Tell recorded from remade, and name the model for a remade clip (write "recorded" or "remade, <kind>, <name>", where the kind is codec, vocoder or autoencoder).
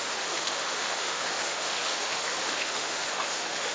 remade, autoencoder, DAC-VAE